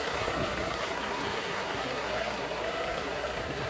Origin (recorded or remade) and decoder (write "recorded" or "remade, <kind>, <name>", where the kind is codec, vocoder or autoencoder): remade, codec, SNAC